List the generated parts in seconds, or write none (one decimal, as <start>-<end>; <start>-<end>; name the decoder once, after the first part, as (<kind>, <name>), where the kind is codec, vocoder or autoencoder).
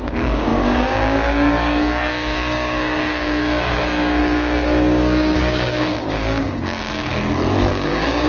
0.0-7.1 (codec, DAC); 7.7-8.3